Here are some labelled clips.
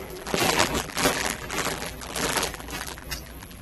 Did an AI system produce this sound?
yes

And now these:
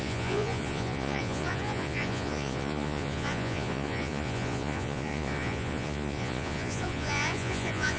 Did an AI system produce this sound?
yes